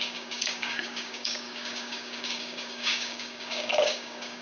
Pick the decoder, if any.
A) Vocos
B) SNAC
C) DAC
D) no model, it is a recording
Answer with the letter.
C